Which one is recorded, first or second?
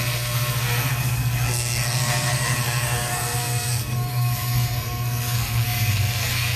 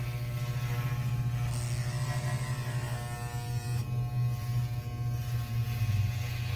second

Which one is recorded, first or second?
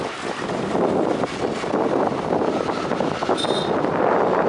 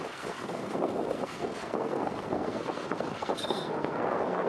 first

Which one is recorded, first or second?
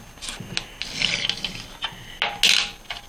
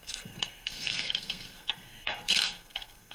first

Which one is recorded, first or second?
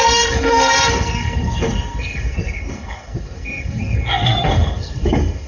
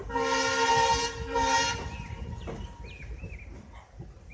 second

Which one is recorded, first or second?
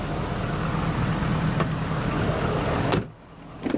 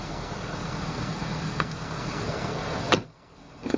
first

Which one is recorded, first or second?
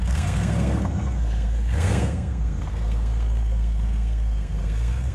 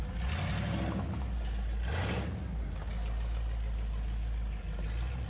second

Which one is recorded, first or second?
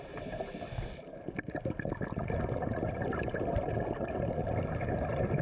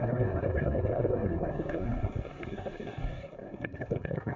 first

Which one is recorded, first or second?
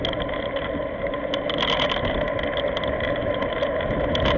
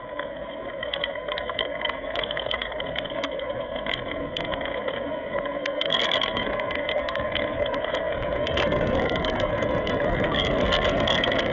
first